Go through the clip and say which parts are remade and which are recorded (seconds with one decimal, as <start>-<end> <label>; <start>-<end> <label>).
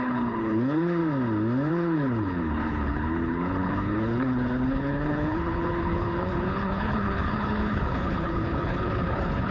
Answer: 0.0-1.0 remade; 1.0-1.7 recorded; 1.7-9.5 remade